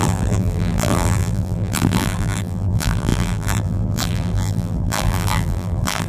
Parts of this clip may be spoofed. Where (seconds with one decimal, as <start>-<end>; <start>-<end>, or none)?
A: 0.0-6.1